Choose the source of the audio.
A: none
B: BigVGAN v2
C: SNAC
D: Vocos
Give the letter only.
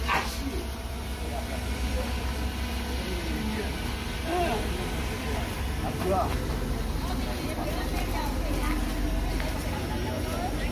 A